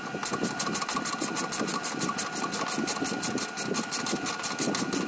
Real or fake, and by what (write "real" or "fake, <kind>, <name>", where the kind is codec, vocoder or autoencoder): real